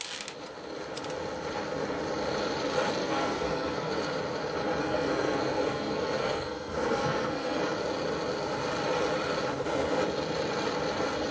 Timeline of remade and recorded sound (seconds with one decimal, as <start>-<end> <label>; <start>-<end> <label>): 0.0-3.0 recorded; 3.0-3.9 remade; 3.9-4.8 recorded; 4.8-7.6 remade; 7.6-11.3 recorded